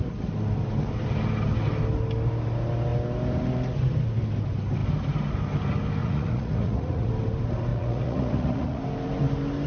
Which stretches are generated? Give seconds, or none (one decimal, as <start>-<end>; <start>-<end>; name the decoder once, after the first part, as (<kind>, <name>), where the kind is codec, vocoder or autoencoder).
6.0-7.1 (vocoder, Vocos); 7.7-8.8